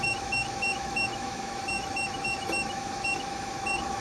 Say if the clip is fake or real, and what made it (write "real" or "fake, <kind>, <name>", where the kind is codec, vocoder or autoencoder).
fake, autoencoder, DAC-VAE